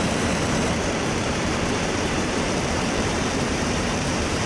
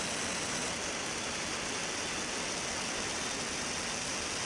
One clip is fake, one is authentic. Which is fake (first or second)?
first